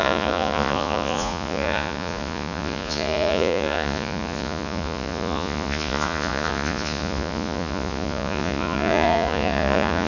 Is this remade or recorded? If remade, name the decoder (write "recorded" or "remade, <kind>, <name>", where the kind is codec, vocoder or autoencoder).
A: remade, vocoder, Vocos